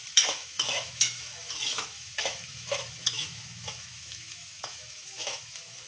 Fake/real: fake